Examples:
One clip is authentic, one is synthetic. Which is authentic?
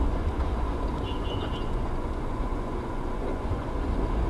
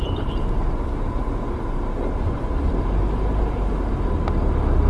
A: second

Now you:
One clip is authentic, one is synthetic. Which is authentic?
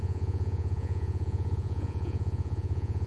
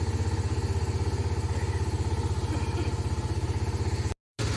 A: second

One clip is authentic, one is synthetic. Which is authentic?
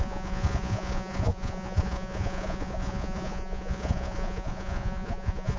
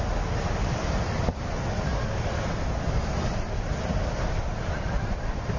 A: second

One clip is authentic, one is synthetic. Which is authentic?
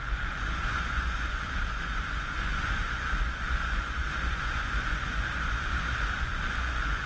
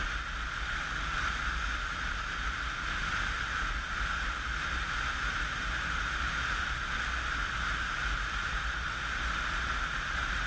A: second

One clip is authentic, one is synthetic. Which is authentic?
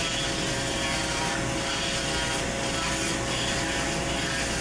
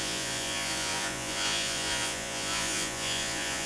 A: first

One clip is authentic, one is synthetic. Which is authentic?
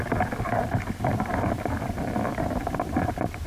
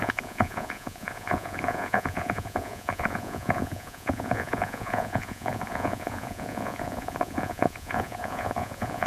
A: first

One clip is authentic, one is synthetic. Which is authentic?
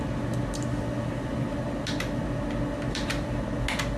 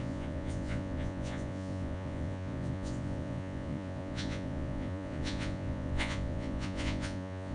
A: first